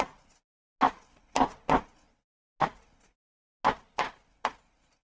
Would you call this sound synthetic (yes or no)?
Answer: no